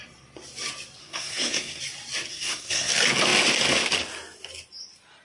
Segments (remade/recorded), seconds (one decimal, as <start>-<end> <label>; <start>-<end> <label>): 0.0-1.0 recorded; 1.0-1.8 remade; 1.8-2.3 recorded; 2.3-2.9 remade; 2.9-5.2 recorded